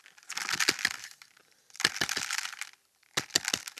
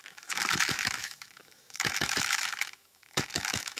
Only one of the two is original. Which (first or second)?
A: first